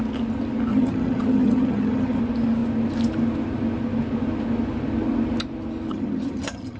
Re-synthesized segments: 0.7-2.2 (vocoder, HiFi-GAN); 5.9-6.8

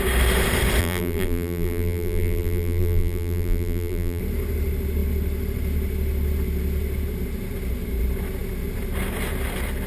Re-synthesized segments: 0.8-4.2 (vocoder, BigVGAN v2)

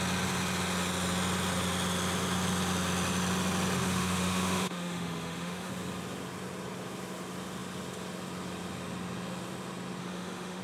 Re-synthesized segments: 3.8-5.7 (autoencoder, DAC-VAE); 10.0-10.6

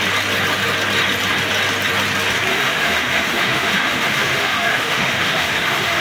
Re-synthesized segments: 2.5-6.0 (autoencoder, DAC-VAE)

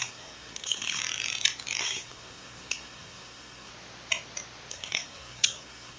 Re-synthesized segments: 0.0-1.0 (codec, SNAC); 1.8-3.7; 4.7-6.0